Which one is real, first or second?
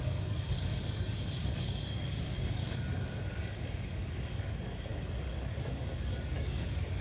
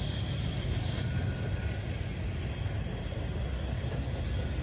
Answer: second